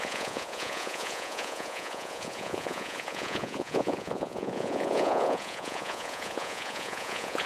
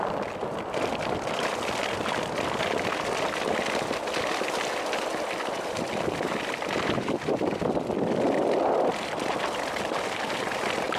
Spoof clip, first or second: first